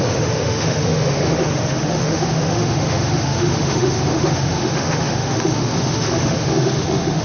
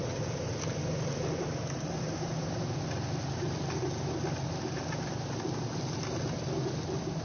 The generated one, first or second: first